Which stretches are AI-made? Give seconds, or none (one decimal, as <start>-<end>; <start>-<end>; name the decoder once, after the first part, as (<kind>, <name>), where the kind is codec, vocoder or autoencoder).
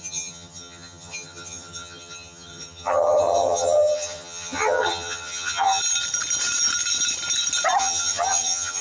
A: 0.0-5.8 (vocoder, HiFi-GAN); 7.8-8.8